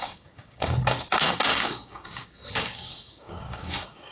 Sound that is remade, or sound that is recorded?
remade